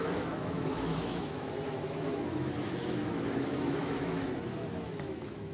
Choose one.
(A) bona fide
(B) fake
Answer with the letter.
B